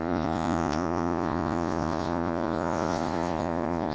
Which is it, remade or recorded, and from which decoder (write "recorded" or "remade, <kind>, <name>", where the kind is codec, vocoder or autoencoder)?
remade, vocoder, Vocos